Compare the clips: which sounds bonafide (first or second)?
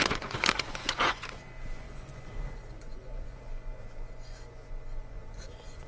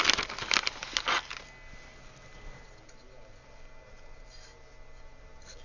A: second